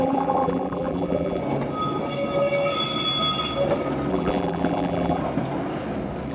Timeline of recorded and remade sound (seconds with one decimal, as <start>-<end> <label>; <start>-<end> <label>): 0.0-1.4 remade; 1.4-4.1 recorded; 4.1-5.2 remade; 5.2-6.3 recorded